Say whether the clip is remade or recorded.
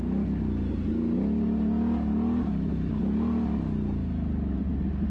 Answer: recorded